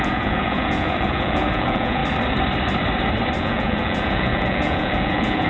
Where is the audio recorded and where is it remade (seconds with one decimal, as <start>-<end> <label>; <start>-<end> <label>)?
0.0-2.0 remade; 2.0-3.4 recorded; 3.4-5.5 remade